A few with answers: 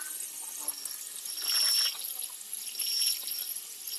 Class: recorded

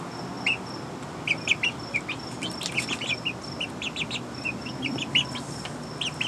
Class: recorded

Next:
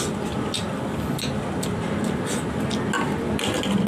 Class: recorded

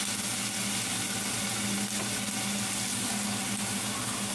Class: recorded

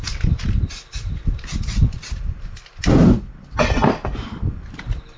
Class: recorded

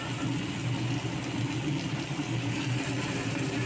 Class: recorded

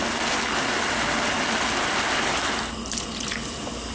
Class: recorded